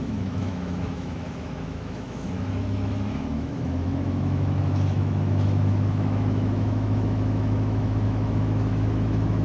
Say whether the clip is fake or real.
fake